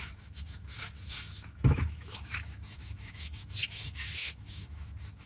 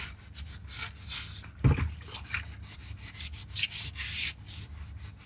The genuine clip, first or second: second